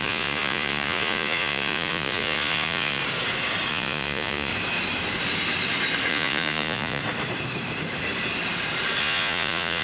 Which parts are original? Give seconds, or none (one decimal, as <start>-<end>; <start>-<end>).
3.0-3.7; 4.5-6.1; 7.0-9.0